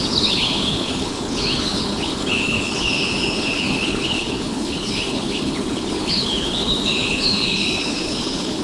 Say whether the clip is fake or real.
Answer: fake